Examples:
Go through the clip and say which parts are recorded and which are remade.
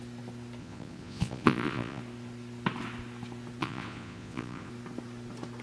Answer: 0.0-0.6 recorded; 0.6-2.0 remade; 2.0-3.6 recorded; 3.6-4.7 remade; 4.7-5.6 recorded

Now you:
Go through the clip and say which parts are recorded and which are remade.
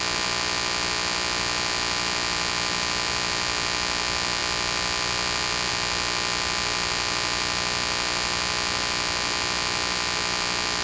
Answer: 0.0-10.8 recorded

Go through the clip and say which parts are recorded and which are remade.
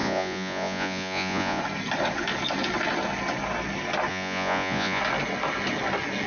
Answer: 0.0-1.6 remade; 1.6-4.1 recorded; 4.1-5.0 remade; 5.0-6.3 recorded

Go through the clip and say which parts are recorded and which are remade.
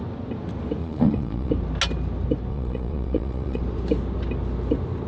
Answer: 0.0-0.8 recorded; 0.8-1.5 remade; 1.5-2.5 recorded; 2.5-3.6 remade; 3.6-5.1 recorded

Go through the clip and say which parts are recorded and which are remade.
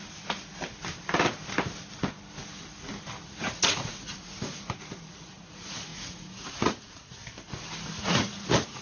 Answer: 0.0-3.2 recorded; 3.2-7.2 remade; 7.2-8.0 recorded; 8.0-8.8 remade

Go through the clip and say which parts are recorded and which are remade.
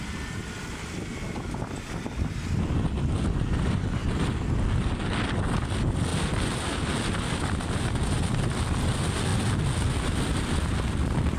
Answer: 0.0-11.4 recorded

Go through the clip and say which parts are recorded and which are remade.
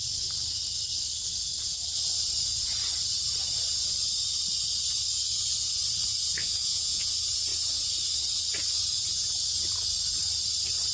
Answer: 0.0-6.4 recorded; 6.4-7.1 remade; 7.1-10.9 recorded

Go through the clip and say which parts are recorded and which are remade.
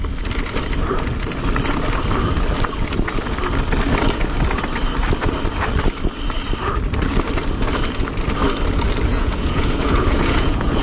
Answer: 0.0-9.1 recorded; 9.1-10.8 remade